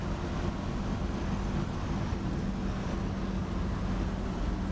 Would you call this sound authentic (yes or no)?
yes